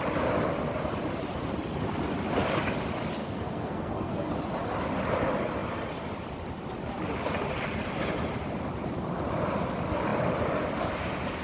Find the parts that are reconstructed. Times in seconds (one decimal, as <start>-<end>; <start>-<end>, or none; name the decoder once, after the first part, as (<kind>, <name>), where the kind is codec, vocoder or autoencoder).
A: 3.2-4.3 (codec, SNAC)